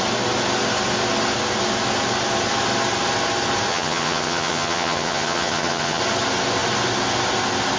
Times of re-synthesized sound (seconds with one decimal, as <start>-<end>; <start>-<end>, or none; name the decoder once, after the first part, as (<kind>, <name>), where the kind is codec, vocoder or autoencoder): 3.7-6.0 (vocoder, HiFi-GAN)